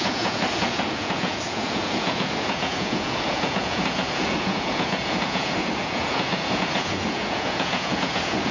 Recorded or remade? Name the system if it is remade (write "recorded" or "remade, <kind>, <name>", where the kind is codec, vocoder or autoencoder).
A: remade, vocoder, Vocos